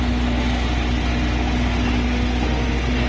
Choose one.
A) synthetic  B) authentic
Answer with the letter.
B